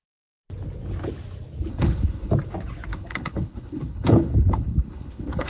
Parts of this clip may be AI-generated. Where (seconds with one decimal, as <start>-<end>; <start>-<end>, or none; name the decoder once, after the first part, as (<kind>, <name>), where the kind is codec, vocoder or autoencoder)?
1.7-2.3 (codec, HILCodec); 2.9-5.5